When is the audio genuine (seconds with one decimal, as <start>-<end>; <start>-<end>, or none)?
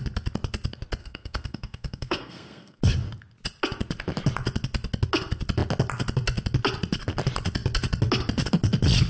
0.0-1.0; 2.8-9.1